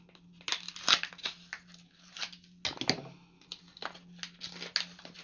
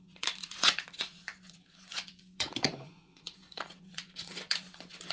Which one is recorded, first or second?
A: first